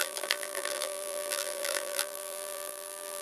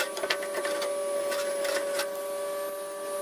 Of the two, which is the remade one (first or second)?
first